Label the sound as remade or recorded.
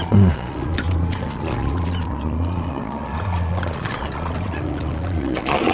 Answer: remade